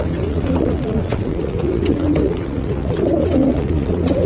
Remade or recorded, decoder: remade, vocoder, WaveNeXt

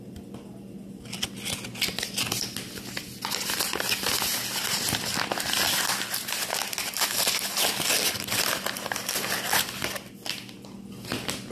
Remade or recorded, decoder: recorded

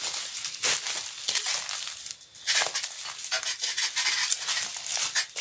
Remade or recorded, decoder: recorded